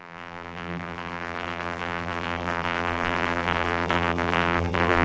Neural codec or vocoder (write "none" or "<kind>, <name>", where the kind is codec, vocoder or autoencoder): vocoder, BigVGAN v2